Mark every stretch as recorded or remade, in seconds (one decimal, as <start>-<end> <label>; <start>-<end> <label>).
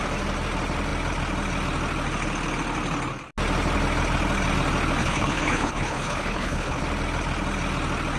0.0-5.0 recorded; 5.0-6.8 remade; 6.8-8.2 recorded